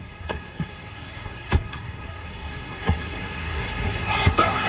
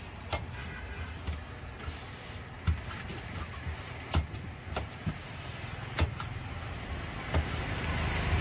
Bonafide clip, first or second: second